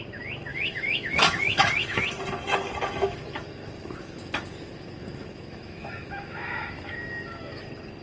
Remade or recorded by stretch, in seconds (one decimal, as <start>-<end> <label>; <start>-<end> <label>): 0.0-0.5 recorded; 0.5-2.0 remade; 2.0-3.0 recorded; 3.0-7.6 remade; 7.6-8.0 recorded